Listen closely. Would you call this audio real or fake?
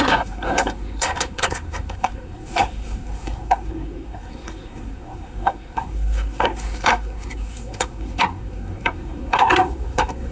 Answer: fake